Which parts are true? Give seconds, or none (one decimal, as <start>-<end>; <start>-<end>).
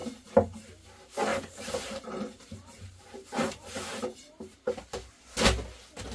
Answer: 0.0-1.3; 5.0-6.1